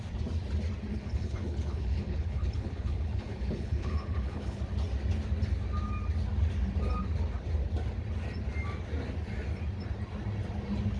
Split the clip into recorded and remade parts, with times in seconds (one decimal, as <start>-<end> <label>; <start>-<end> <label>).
0.0-0.9 recorded; 0.9-4.6 remade; 4.6-11.0 recorded